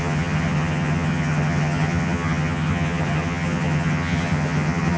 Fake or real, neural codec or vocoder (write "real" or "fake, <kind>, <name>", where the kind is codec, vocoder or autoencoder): fake, vocoder, HiFi-GAN